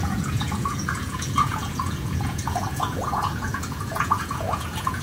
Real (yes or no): no